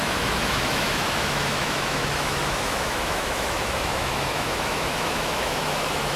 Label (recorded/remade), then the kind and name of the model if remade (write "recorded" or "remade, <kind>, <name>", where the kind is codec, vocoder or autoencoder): remade, autoencoder, DAC-VAE